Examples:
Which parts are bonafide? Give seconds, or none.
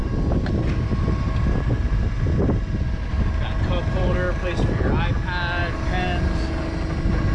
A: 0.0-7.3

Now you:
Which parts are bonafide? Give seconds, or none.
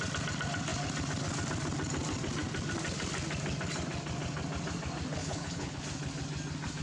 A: 0.0-5.2; 5.8-6.8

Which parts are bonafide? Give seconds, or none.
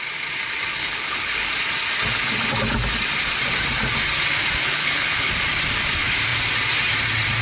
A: 0.0-0.8; 1.5-4.6; 5.3-7.4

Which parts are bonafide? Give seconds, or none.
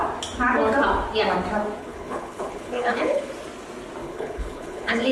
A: 0.0-1.8; 3.3-4.0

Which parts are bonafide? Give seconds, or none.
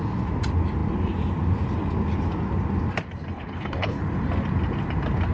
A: 0.0-3.3; 4.0-5.3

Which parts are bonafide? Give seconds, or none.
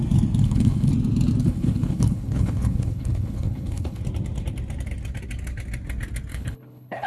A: 0.0-0.4; 0.9-1.4; 4.0-6.3